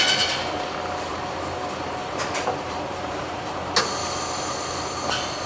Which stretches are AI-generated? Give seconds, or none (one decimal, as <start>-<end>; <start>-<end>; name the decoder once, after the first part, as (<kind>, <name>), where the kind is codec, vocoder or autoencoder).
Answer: 1.1-3.7 (vocoder, BigVGAN v2)